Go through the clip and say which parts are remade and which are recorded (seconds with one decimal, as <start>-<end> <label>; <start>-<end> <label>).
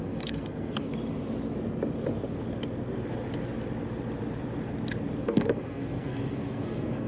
0.0-0.9 remade; 0.9-5.2 recorded; 5.2-7.1 remade